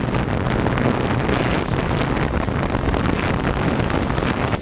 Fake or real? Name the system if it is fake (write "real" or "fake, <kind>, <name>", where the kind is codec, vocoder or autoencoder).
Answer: real